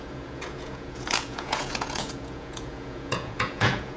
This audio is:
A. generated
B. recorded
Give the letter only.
A